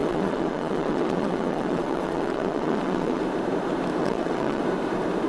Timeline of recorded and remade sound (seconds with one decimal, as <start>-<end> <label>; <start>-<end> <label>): 0.0-3.2 remade; 3.2-4.0 recorded; 4.0-4.6 remade; 4.6-5.3 recorded